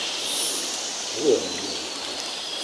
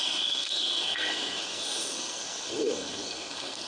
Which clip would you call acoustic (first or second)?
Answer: first